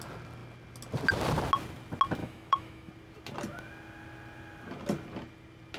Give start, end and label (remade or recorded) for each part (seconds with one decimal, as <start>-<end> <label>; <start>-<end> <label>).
0.0-2.2 recorded; 2.2-2.9 remade; 2.9-5.8 recorded